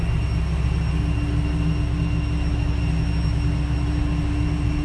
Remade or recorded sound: recorded